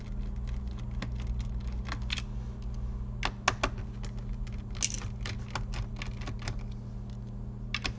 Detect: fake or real real